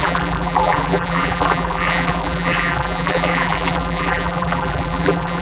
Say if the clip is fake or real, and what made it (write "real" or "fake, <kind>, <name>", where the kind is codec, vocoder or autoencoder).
fake, vocoder, BigVGAN v2